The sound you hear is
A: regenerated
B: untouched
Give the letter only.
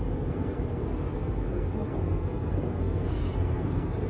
A